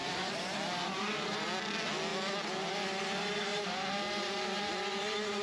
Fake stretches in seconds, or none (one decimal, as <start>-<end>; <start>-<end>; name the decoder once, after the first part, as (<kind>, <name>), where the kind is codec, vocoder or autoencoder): 0.0-1.5 (vocoder, BigVGAN v2); 3.5-4.6